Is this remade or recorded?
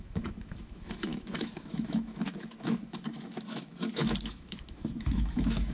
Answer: remade